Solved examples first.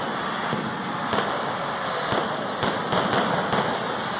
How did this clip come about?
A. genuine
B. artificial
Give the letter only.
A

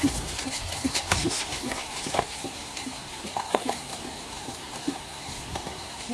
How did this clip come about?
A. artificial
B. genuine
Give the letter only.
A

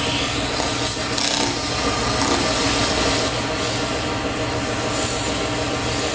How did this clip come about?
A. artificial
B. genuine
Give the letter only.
B